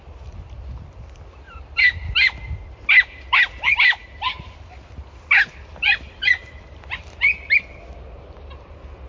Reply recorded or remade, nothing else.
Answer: remade